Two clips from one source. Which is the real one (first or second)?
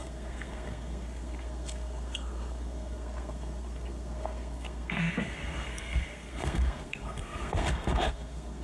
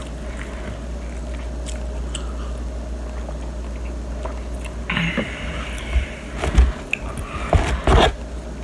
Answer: second